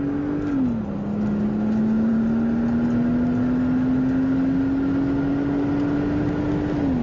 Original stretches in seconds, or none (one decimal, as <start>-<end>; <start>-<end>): 0.0-7.0

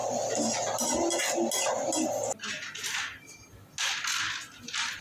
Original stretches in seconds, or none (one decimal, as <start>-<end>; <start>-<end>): 0.0-5.0

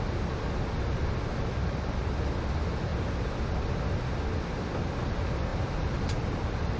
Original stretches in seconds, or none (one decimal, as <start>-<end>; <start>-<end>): 0.0-1.6; 2.2-5.5

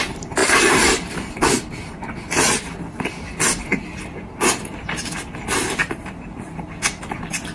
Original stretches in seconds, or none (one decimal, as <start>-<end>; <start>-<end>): 0.0-0.4; 1.3-5.8; 7.0-7.5

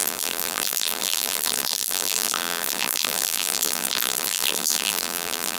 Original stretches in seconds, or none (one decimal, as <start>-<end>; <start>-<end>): none